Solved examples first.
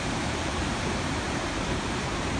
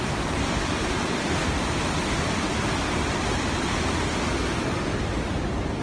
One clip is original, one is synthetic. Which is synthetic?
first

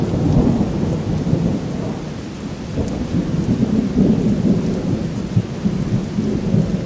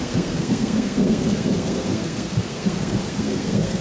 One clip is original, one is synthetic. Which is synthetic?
second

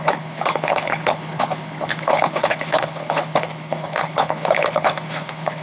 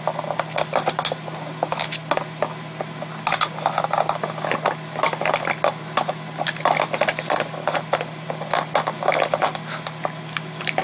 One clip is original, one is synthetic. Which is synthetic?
first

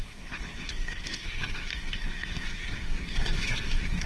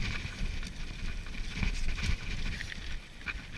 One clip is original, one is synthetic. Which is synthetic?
first